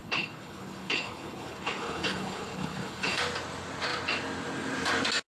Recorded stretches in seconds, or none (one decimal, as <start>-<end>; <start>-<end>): 3.2-5.3